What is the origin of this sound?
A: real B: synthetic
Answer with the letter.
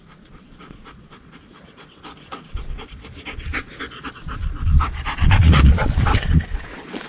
B